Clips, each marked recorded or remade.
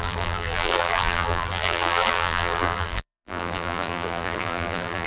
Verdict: remade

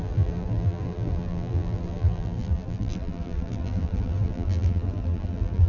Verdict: remade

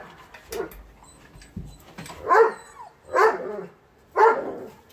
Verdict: recorded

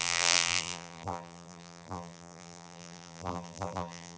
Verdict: remade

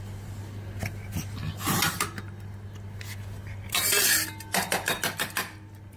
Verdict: recorded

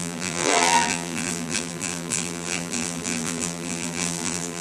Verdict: remade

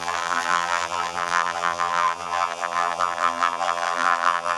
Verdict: remade